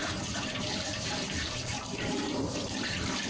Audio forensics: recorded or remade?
remade